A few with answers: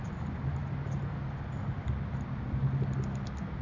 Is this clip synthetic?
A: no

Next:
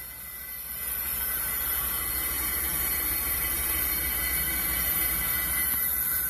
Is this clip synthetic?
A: yes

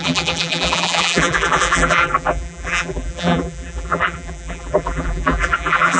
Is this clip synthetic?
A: yes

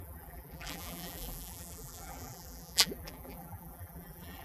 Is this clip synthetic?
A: yes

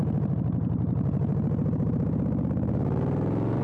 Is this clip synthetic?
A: yes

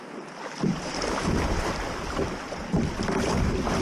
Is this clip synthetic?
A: no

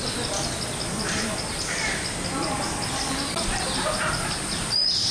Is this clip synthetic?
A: no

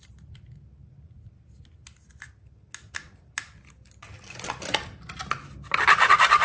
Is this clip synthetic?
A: no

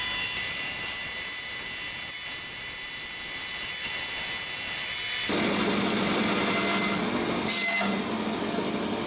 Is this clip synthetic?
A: no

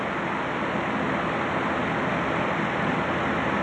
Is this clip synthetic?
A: no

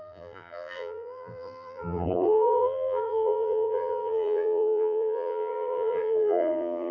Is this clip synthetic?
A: yes